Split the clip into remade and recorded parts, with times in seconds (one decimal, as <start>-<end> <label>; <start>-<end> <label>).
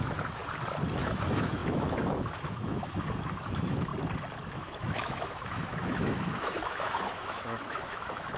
0.0-0.4 remade; 0.4-1.0 recorded; 1.0-3.9 remade; 3.9-4.5 recorded; 4.5-8.4 remade